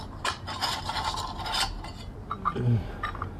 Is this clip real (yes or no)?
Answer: yes